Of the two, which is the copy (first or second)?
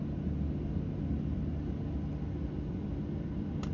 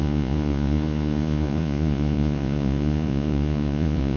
second